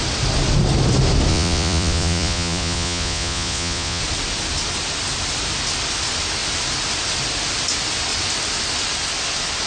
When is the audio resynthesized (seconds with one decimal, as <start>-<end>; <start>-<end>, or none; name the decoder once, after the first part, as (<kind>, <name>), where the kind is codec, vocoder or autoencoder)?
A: 1.3-4.0 (vocoder, Vocos)